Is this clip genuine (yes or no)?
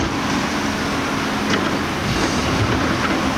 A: yes